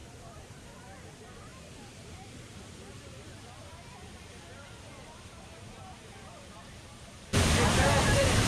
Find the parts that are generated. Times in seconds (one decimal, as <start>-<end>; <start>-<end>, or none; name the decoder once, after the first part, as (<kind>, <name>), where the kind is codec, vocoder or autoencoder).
0.0-3.6 (vocoder, BigVGAN v2); 6.1-8.5